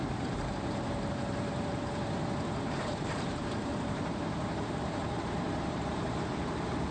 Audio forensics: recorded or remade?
remade